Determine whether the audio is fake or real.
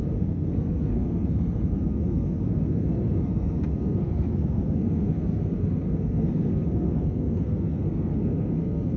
fake